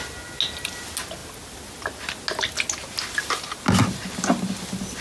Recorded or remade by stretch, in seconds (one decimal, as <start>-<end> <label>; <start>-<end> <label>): 0.0-5.0 recorded